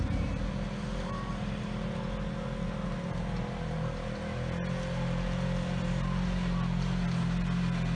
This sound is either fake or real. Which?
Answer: real